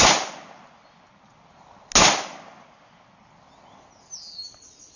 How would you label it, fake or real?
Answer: real